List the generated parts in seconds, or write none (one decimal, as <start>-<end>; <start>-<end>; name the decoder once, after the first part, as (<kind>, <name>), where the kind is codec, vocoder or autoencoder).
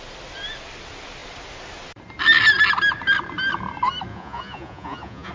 4.1-5.3 (vocoder, Vocos)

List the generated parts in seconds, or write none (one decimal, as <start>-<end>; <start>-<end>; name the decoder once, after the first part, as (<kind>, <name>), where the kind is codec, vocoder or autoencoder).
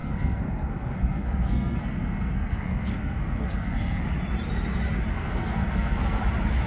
0.0-4.0 (codec, SNAC); 5.1-6.2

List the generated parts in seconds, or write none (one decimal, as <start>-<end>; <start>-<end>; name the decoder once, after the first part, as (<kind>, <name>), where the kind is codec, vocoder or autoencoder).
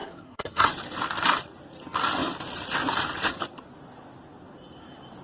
0.0-0.7 (codec, SNAC)